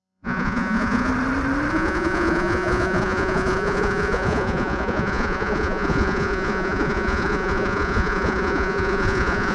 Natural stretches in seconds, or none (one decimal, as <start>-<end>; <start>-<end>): 1.1-1.7